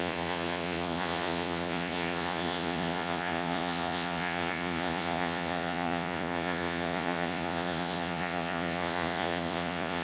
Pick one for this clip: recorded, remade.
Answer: remade